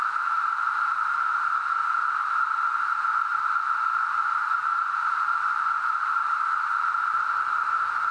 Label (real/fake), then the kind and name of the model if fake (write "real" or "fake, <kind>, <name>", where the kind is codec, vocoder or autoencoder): real